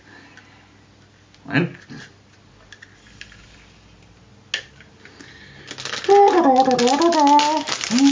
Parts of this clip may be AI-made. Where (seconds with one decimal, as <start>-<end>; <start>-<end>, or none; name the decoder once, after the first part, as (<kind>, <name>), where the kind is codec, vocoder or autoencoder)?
none